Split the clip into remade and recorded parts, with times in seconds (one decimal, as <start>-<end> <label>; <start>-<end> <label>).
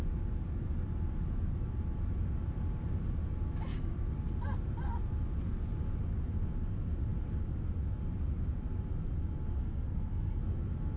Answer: 0.0-9.6 recorded; 9.6-10.4 remade; 10.4-11.0 recorded